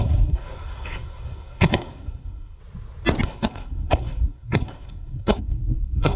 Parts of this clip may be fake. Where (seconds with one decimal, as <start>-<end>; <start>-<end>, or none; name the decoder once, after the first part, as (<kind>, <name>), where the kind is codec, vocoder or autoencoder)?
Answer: 0.0-2.6 (codec, SNAC); 3.2-6.2